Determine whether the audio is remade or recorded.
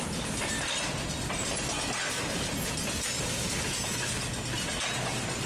recorded